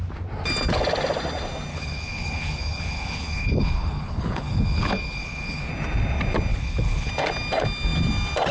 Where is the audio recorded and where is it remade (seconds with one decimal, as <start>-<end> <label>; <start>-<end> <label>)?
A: 0.0-1.7 recorded; 1.7-5.7 remade; 5.7-6.5 recorded; 6.5-7.1 remade; 7.1-8.5 recorded